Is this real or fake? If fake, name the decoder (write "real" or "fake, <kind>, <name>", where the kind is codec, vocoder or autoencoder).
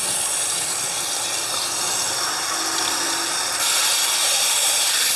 real